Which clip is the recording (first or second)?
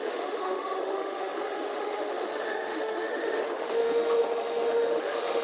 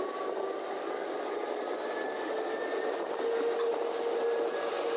second